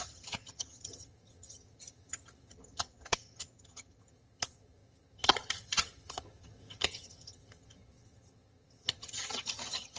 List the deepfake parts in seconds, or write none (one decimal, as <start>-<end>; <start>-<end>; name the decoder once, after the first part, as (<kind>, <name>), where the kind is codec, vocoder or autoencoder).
0.0-10.0 (vocoder, HiFi-GAN)